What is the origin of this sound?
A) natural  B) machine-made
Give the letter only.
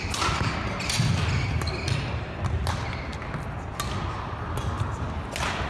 A